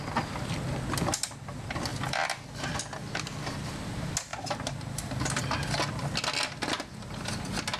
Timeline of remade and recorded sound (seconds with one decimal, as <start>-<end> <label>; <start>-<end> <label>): 0.0-1.9 recorded; 1.9-2.8 remade; 2.8-4.3 recorded; 4.3-5.4 remade; 5.4-7.8 recorded

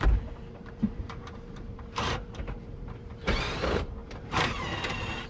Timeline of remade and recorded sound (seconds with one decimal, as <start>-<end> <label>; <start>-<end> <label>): 0.0-5.3 remade

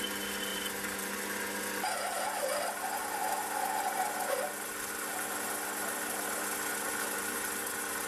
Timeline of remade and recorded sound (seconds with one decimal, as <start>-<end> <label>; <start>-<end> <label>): 0.0-0.5 recorded; 0.5-1.1 remade; 1.1-8.1 recorded

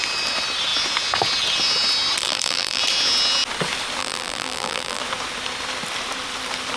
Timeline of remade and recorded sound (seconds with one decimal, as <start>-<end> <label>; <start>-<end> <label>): 0.0-2.2 recorded; 2.2-2.8 remade; 2.8-4.0 recorded; 4.0-5.0 remade; 5.0-6.8 recorded

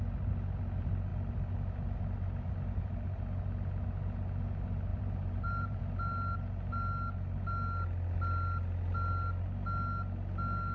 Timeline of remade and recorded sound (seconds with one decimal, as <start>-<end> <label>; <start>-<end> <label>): 0.0-4.9 recorded; 4.9-5.8 remade; 5.8-10.7 recorded

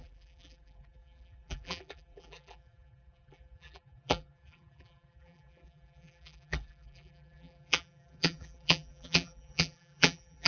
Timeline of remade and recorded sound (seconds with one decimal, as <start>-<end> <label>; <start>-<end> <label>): 0.0-10.5 remade

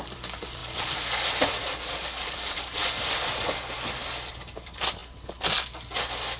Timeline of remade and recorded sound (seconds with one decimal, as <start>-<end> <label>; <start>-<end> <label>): 0.0-2.8 remade; 2.8-4.3 recorded; 4.3-5.0 remade; 5.0-6.4 recorded